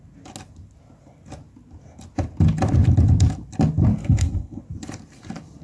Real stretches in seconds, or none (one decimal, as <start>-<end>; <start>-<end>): 0.0-4.0; 4.6-5.6